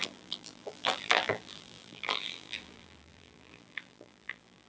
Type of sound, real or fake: fake